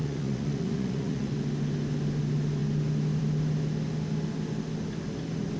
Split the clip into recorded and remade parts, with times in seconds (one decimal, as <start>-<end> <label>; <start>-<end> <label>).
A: 0.0-1.3 remade; 1.3-5.6 recorded